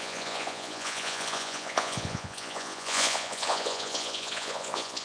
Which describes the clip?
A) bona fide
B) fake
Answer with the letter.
B